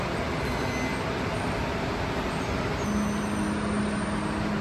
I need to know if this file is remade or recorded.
recorded